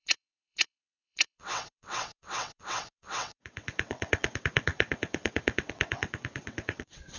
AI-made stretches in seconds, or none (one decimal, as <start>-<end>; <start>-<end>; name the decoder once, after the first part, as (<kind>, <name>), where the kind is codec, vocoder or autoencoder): 0.0-7.2 (vocoder, WaveNeXt)